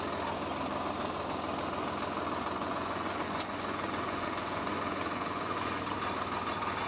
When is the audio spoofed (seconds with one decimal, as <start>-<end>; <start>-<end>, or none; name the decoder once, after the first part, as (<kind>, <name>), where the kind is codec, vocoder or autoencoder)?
2.6-5.8 (vocoder, Vocos)